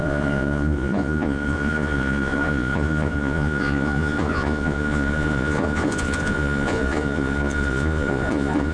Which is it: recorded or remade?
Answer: remade